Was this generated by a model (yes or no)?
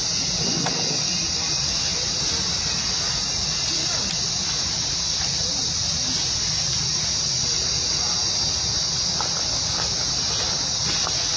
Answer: no